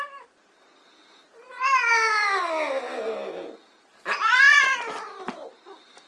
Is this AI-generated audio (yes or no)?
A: no